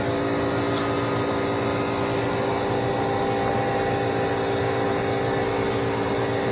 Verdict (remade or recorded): recorded